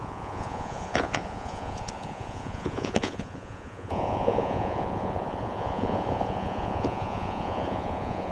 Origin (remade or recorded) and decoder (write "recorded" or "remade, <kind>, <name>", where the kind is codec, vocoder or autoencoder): remade, vocoder, Vocos